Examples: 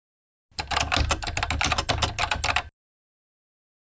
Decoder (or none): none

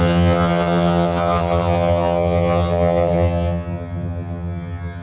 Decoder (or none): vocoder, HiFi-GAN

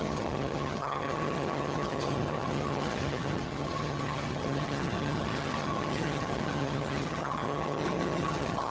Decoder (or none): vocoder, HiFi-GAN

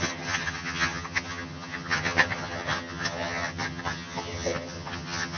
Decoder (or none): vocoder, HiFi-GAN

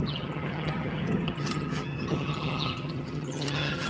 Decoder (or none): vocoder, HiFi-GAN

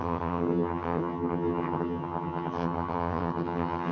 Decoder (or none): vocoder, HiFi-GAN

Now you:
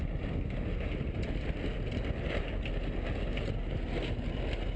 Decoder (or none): none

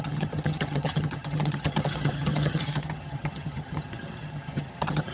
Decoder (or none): vocoder, HiFi-GAN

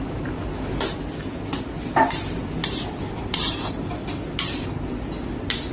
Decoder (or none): none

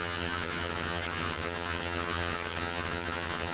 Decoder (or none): vocoder, HiFi-GAN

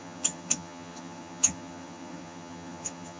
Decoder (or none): vocoder, HiFi-GAN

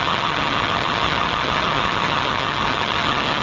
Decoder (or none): vocoder, HiFi-GAN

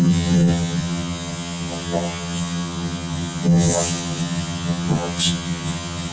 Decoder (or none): vocoder, HiFi-GAN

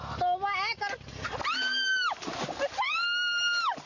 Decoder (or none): none